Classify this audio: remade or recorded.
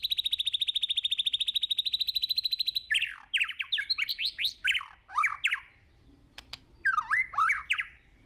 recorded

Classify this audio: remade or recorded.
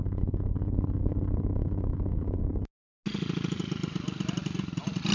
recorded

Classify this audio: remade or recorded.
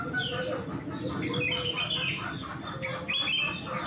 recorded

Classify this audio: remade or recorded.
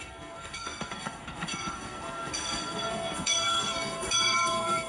remade